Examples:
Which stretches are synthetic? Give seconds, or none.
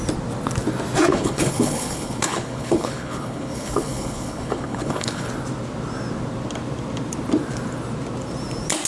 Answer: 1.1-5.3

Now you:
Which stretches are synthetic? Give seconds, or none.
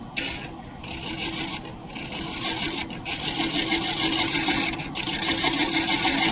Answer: none